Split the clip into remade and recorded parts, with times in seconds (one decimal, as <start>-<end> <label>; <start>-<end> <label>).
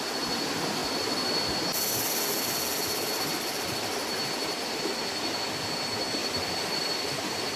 0.0-6.2 recorded; 6.2-7.6 remade